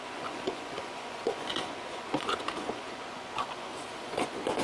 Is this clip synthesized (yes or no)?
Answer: yes